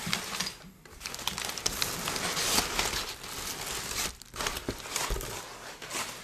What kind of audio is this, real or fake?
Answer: real